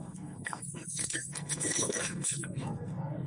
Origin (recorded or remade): remade